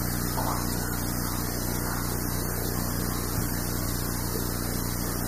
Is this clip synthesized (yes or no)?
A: no